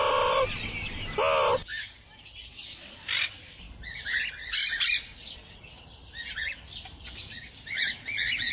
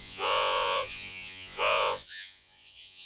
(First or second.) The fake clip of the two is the second